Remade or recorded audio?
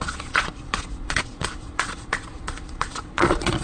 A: remade